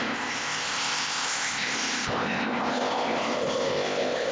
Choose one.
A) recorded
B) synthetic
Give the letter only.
B